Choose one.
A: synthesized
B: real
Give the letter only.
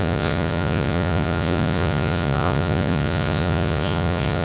A